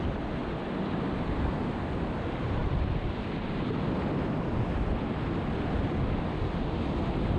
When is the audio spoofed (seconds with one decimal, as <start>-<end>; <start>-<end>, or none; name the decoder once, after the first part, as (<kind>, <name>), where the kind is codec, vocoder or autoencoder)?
none